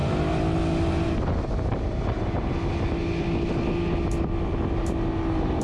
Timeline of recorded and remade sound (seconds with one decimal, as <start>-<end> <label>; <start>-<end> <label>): 0.0-5.6 recorded